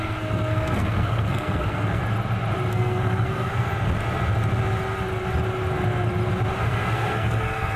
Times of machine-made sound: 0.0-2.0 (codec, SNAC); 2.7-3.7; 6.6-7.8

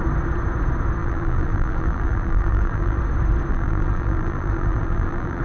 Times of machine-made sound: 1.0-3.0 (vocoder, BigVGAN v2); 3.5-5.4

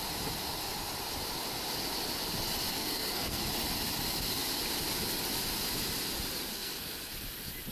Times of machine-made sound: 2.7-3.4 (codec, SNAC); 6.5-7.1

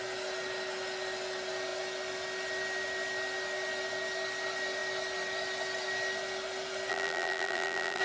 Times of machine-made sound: 6.9-8.0 (vocoder, BigVGAN v2)